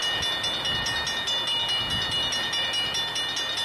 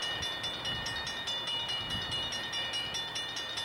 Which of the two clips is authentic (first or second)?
first